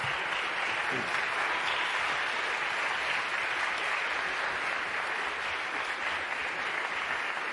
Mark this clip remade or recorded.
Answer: recorded